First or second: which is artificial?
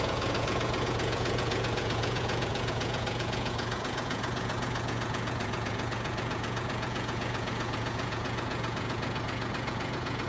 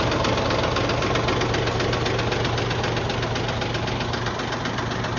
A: first